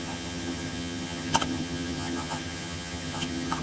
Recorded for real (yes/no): no